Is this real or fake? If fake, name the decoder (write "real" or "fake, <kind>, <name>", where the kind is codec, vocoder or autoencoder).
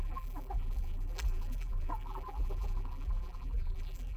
fake, vocoder, BigVGAN v2